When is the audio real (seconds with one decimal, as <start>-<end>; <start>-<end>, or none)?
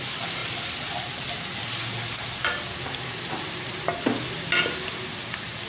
0.0-5.7